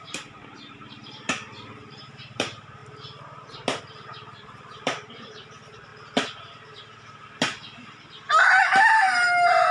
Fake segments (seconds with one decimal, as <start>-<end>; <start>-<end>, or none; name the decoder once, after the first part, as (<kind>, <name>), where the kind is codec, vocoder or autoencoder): 0.0-2.8 (vocoder, BigVGAN v2); 3.8-5.9; 8.6-9.7